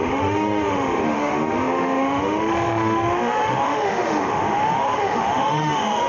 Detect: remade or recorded remade